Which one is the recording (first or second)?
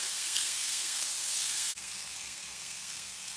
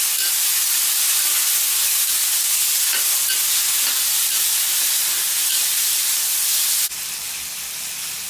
second